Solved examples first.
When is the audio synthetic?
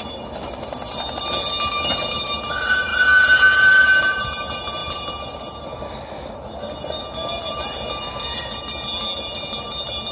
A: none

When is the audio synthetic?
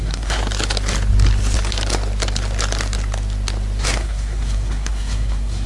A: 0.0-0.4; 3.8-5.7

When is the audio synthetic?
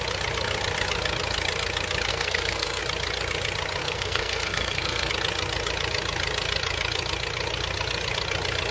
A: 2.1-2.8; 3.8-5.1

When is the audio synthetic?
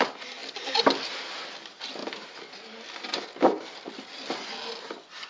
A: none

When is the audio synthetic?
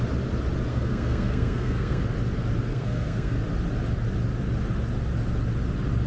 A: 0.7-2.0; 2.7-3.4